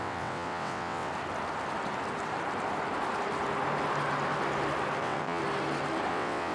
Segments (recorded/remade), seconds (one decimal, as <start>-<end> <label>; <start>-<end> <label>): 0.0-1.1 remade; 1.1-5.0 recorded; 5.0-5.4 remade; 5.4-6.1 recorded; 6.1-6.5 remade